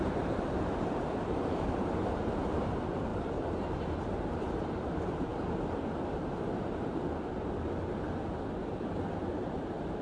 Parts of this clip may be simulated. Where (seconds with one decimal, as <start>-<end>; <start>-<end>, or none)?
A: 0.0-5.3; 6.1-7.0; 8.6-10.0